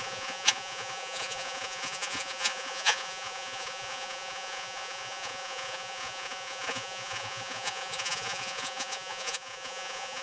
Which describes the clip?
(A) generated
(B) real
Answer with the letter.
A